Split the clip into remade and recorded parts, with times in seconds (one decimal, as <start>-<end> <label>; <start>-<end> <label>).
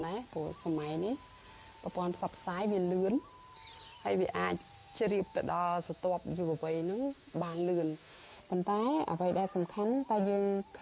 0.0-4.8 recorded; 4.8-8.4 remade; 8.4-10.8 recorded